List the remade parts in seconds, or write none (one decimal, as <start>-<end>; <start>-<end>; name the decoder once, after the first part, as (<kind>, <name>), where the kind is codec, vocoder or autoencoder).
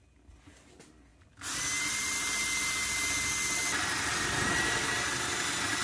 none